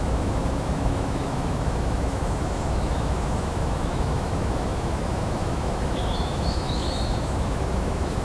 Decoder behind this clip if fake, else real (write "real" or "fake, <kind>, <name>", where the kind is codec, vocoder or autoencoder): fake, autoencoder, DAC-VAE